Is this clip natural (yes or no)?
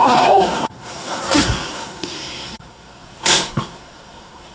no